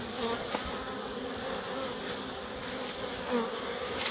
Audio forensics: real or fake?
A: real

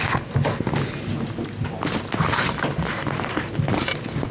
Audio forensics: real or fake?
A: real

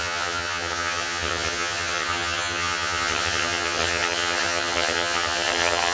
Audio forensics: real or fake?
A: fake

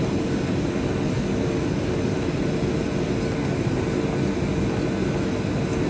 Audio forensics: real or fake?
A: real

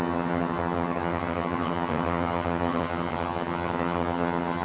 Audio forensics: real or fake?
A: fake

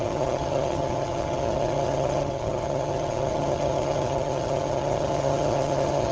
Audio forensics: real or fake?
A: fake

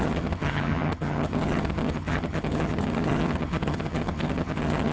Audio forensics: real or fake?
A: fake